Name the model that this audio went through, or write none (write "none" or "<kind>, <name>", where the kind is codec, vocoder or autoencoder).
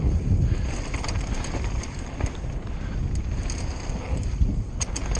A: none